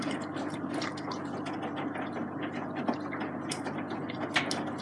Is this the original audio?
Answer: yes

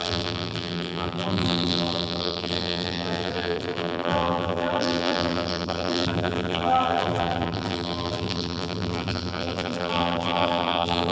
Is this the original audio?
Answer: no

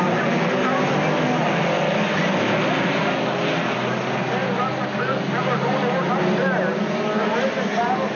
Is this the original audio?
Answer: yes